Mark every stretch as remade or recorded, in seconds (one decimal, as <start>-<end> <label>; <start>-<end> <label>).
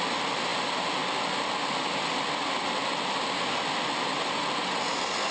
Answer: 0.0-5.3 recorded